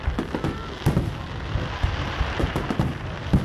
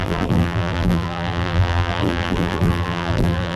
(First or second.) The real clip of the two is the first